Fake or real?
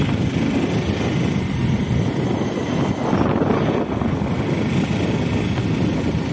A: real